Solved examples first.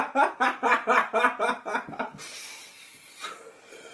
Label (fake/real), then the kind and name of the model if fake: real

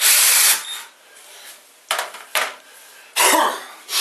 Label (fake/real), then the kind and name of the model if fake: real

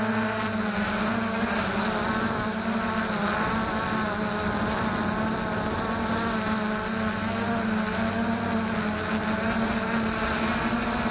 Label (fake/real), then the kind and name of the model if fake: real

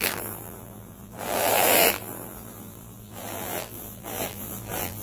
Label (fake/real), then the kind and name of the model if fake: fake, vocoder, BigVGAN v2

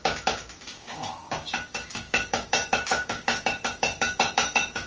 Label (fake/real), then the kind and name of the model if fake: fake, codec, DAC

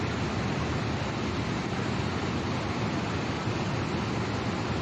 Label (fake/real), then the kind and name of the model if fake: real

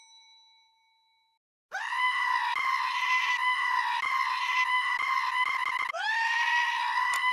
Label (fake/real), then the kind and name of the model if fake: real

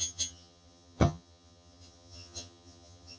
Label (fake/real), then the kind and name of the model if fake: fake, vocoder, HiFi-GAN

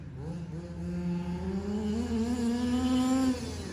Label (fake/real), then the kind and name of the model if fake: real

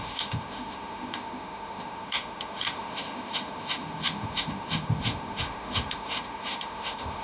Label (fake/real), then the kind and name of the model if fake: fake, autoencoder, DAC-VAE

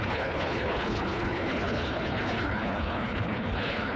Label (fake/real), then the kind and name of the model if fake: fake, codec, HILCodec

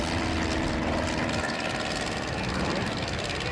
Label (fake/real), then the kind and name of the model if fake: real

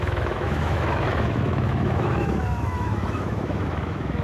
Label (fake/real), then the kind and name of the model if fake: fake, autoencoder, DAC-VAE